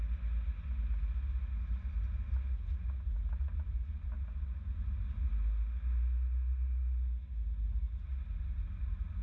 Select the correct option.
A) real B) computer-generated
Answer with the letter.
A